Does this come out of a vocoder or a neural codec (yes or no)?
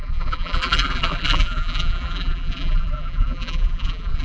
yes